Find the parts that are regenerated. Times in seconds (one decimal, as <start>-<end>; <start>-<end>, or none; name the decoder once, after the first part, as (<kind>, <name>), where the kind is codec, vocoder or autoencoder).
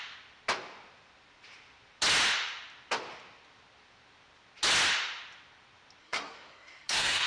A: 6.0-7.3 (codec, SNAC)